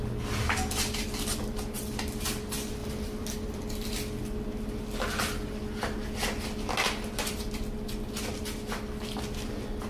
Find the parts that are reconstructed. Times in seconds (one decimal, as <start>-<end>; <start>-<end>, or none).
2.8-3.6